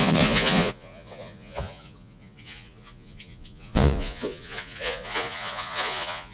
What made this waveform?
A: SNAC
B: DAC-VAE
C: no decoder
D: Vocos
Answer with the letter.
D